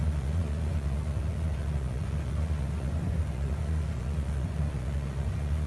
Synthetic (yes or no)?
yes